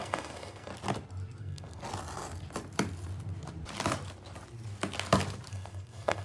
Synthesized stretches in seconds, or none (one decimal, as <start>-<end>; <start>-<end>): 0.0-0.7; 1.4-1.8; 5.5-6.2